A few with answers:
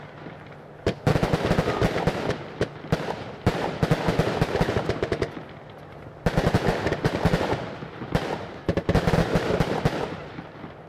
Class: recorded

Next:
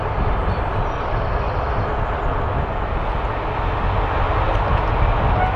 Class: recorded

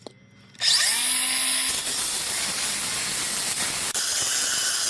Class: recorded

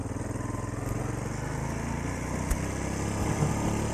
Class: recorded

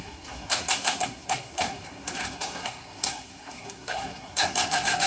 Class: remade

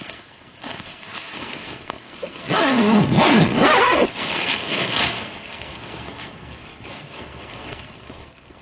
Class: remade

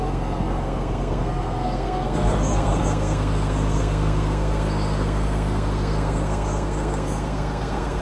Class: remade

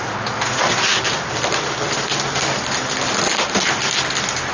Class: recorded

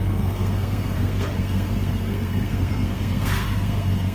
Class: remade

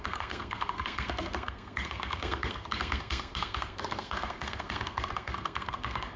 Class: remade